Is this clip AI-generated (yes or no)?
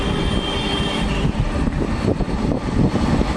no